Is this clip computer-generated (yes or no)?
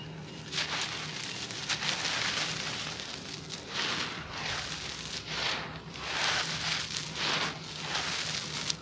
no